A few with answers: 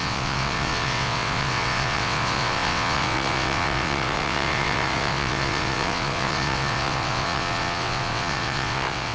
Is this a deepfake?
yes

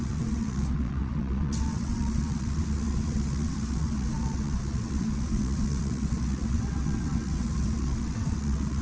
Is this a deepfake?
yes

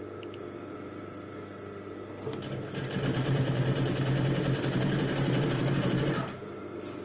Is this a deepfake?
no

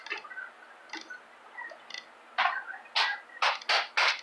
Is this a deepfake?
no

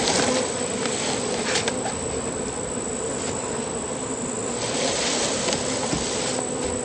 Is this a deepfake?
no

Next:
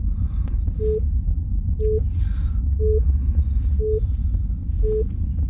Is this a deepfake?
no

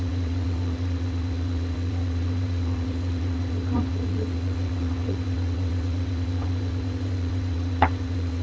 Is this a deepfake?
yes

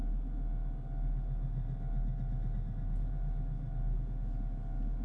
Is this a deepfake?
no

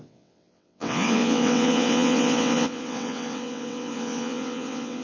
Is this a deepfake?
yes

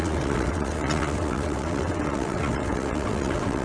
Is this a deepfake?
yes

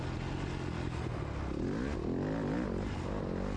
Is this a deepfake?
no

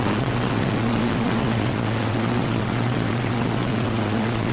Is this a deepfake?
yes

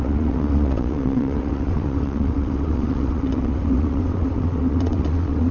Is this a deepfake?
yes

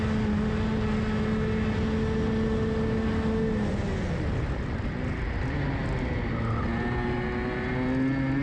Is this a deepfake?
no